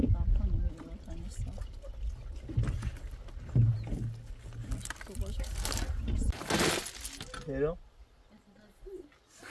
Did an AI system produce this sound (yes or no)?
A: no